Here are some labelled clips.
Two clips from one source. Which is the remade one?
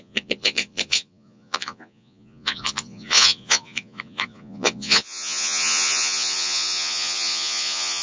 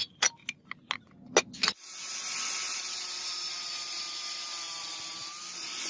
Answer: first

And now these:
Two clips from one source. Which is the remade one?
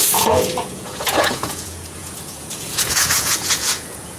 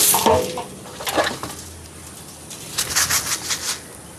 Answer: first